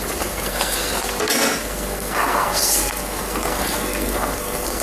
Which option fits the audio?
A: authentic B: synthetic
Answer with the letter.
B